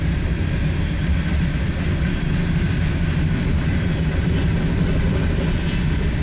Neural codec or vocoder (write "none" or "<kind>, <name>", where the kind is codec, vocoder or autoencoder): none